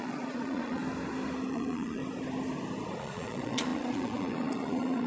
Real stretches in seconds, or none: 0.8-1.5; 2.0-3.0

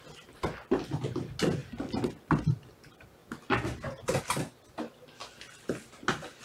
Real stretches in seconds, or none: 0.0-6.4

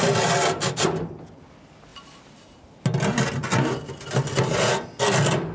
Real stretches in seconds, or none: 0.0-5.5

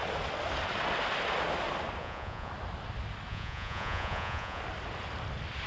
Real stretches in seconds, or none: 0.0-2.0; 2.5-3.3; 4.6-5.7

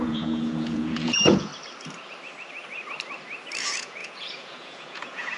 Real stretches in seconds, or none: 1.5-3.6

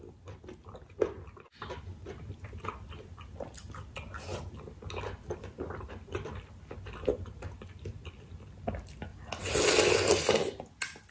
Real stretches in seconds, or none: 0.0-11.1

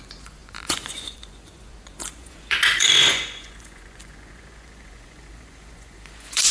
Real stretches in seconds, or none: none